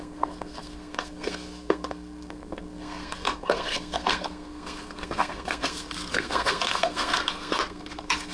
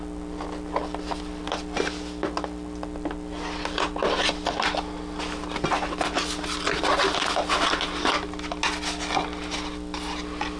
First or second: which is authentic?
second